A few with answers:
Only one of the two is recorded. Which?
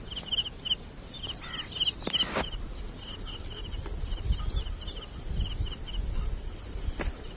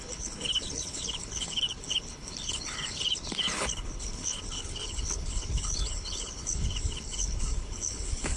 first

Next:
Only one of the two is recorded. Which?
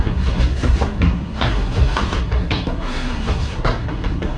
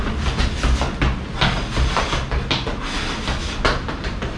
second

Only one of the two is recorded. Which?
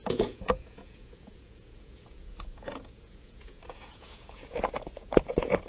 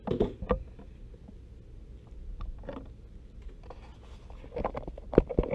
second